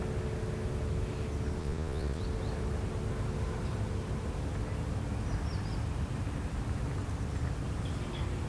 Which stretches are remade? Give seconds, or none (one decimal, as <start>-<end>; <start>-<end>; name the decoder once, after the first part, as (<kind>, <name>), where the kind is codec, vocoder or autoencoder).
1.6-2.2 (vocoder, Vocos)